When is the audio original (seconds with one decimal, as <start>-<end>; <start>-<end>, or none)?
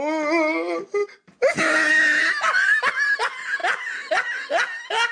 0.0-5.1